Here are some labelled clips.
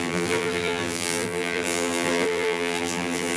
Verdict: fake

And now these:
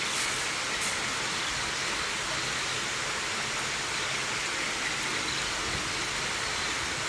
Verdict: real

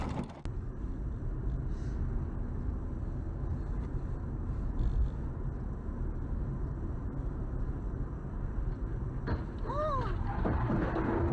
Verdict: real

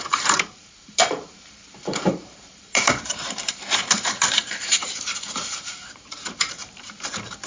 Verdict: fake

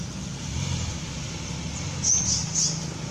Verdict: real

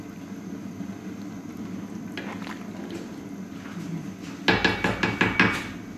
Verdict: real